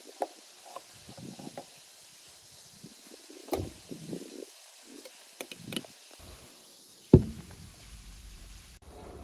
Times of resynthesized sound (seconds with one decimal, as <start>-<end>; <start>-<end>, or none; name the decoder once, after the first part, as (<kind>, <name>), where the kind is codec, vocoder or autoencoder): 6.6-7.4 (vocoder, BigVGAN v2); 8.2-9.2